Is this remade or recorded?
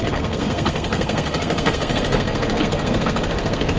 remade